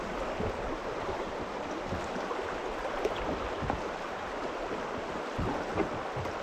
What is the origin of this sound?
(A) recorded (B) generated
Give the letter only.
A